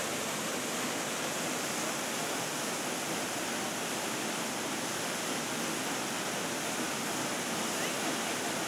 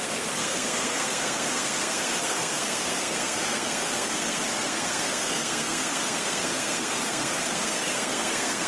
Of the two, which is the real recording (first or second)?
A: first